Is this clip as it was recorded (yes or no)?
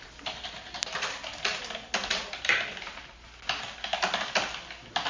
yes